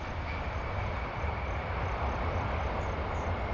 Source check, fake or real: fake